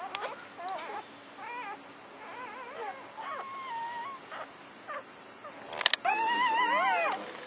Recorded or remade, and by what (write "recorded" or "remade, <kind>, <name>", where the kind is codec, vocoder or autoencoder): recorded